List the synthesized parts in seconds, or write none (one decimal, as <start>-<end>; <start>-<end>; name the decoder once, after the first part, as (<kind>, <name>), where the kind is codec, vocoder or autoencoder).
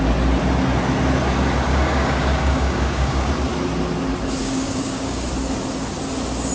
1.7-3.3 (codec, DAC); 4.4-5.3